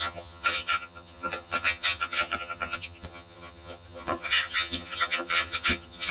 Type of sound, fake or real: fake